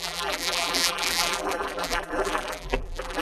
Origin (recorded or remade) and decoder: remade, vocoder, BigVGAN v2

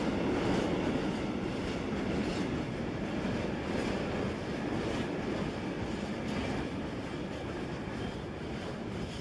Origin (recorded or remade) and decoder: recorded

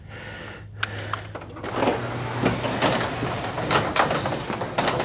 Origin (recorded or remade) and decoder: recorded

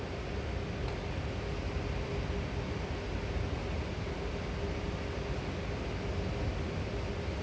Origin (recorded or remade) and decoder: recorded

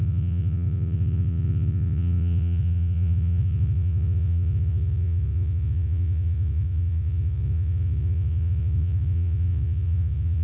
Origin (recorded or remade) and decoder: remade, vocoder, Vocos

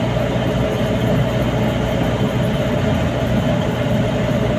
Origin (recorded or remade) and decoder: recorded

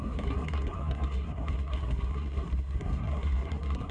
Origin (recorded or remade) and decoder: remade, codec, SNAC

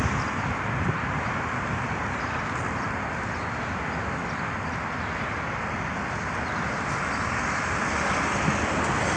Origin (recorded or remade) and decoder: recorded